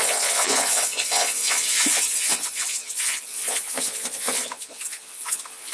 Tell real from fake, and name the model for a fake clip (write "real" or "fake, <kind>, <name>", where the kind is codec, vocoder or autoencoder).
fake, vocoder, Vocos